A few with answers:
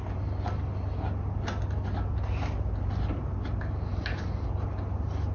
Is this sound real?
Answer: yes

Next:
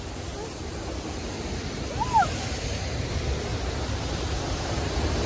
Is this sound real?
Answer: yes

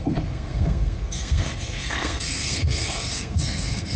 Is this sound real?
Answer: no